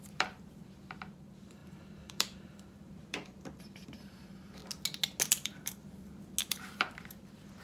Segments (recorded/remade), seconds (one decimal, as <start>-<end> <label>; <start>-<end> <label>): 0.0-4.6 remade; 4.6-5.3 recorded; 5.3-5.8 remade; 5.8-6.4 recorded; 6.4-7.6 remade